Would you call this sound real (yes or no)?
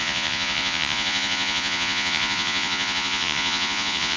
no